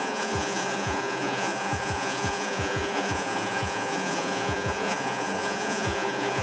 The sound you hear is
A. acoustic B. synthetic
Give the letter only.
B